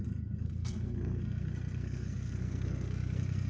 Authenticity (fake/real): fake